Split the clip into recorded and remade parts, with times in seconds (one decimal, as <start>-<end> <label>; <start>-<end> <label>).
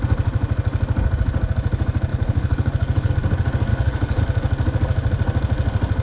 0.0-2.1 recorded; 2.1-3.1 remade; 3.1-3.7 recorded; 3.7-4.2 remade; 4.2-6.0 recorded